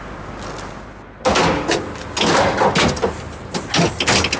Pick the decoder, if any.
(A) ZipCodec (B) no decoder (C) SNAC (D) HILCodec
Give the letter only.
B